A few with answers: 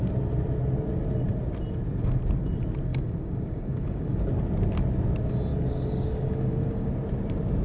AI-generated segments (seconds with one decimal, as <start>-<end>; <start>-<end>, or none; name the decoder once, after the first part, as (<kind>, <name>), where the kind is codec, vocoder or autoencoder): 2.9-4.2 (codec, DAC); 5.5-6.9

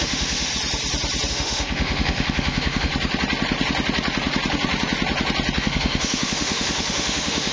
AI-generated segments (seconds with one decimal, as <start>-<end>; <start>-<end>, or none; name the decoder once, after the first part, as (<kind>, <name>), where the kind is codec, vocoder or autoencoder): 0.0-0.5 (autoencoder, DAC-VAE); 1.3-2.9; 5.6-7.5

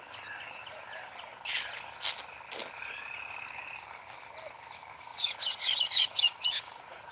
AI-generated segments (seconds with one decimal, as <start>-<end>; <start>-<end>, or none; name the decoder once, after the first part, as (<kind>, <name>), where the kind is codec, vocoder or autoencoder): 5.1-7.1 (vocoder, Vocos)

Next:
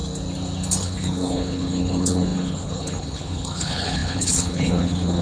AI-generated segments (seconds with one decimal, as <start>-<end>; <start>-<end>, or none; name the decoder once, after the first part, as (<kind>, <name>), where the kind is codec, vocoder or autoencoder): 0.8-5.2 (codec, HILCodec)